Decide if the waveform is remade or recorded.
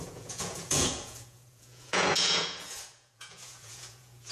remade